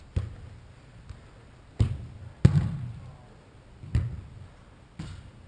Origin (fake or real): real